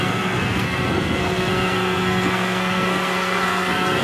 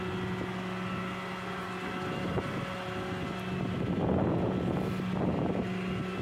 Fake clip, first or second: first